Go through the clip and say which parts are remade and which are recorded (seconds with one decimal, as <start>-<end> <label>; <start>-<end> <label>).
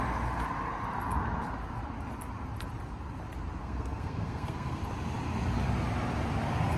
0.0-3.6 recorded; 3.6-4.8 remade; 4.8-6.8 recorded